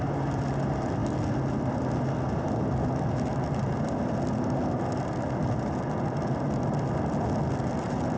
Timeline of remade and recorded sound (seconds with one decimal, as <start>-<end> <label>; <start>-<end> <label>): 0.0-8.2 recorded